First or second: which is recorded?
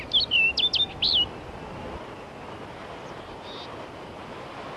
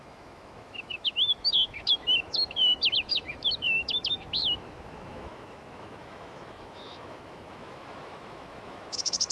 first